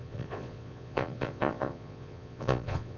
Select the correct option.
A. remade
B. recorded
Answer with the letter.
A